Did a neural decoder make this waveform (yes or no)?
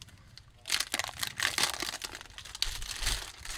no